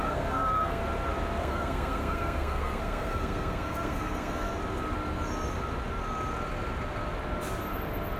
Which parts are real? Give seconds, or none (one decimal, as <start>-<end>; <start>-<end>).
0.8-1.4; 4.5-8.2

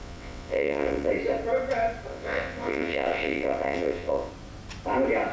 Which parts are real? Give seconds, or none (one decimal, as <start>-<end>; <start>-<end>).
1.1-2.1; 4.3-5.3

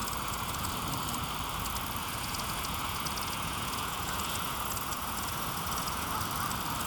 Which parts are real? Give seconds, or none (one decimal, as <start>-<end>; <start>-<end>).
0.7-2.0; 6.1-6.9

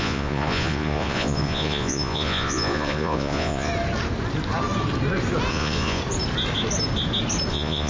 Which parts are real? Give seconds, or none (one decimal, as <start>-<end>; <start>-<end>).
3.7-5.5; 6.0-7.5

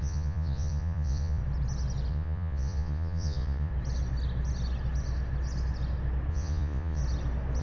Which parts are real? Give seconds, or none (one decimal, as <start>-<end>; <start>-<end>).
1.4-2.1; 3.7-6.3; 7.0-7.6

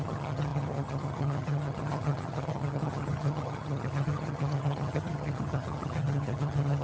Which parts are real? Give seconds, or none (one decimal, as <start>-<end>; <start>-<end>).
none

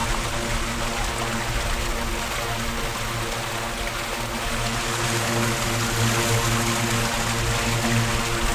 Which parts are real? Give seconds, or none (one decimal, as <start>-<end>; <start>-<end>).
0.0-8.5

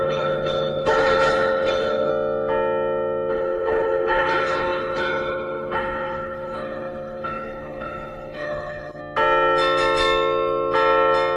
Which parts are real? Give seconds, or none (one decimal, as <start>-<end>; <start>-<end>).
2.1-3.3; 9.0-11.4